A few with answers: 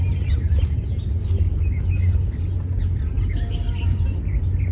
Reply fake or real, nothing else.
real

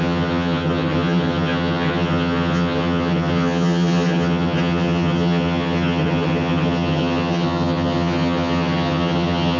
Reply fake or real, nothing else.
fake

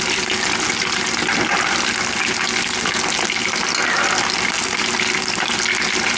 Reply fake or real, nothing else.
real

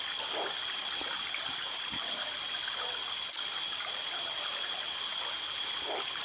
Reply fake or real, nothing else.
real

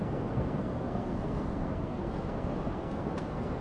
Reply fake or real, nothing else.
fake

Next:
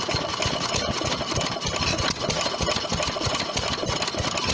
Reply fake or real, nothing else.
real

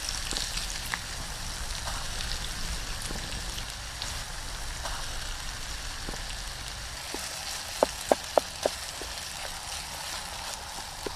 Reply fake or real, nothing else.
real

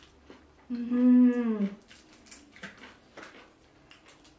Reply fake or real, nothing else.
real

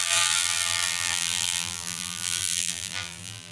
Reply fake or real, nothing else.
fake